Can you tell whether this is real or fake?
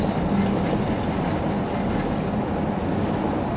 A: real